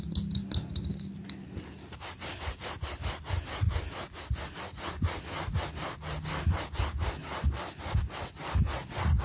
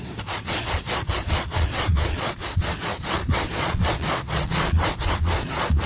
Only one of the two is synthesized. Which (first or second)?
second